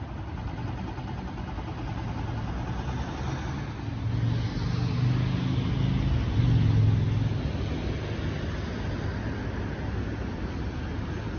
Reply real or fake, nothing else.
real